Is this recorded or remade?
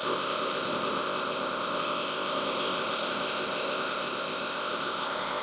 remade